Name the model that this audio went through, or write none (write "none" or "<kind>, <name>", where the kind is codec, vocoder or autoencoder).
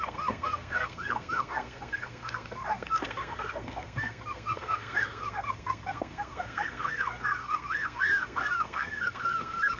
codec, SNAC